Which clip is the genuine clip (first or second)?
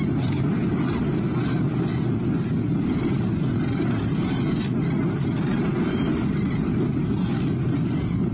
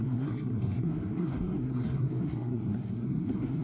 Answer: first